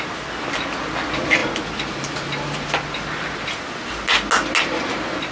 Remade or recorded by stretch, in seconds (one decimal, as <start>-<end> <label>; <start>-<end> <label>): 0.0-5.3 recorded